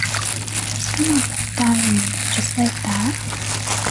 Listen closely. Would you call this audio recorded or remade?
recorded